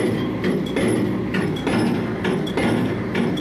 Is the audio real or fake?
real